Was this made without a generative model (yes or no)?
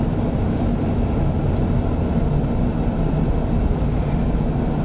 yes